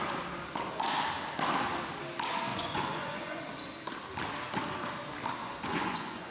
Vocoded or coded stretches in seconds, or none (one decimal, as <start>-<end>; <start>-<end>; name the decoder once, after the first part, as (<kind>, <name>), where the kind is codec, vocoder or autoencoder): 2.5-3.4 (vocoder, Vocos); 5.4-6.3